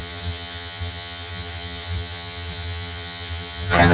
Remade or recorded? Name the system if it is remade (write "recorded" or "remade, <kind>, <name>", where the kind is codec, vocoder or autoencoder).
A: remade, vocoder, HiFi-GAN